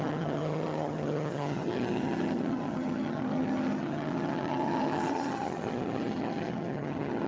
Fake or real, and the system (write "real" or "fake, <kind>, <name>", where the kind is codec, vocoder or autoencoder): fake, vocoder, HiFi-GAN